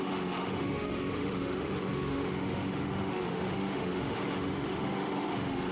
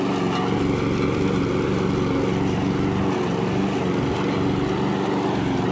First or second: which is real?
second